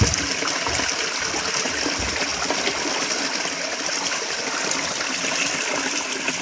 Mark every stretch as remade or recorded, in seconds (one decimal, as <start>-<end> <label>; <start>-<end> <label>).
0.0-6.4 recorded